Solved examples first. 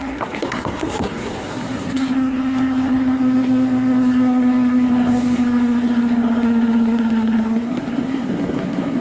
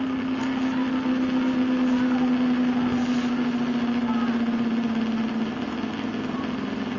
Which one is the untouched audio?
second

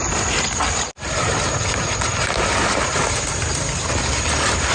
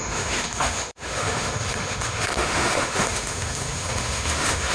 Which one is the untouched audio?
first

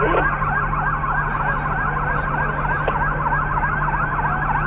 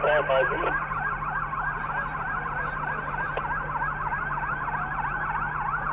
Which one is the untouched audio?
first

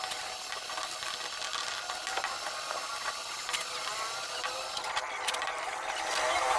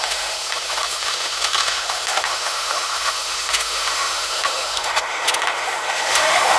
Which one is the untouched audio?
first